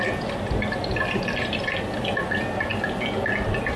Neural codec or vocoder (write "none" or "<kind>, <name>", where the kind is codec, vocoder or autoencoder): none